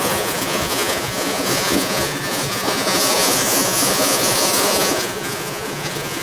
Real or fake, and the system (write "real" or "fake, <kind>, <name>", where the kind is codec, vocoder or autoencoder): fake, vocoder, Vocos